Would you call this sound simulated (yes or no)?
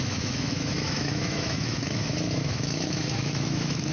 yes